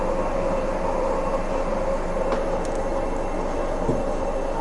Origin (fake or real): real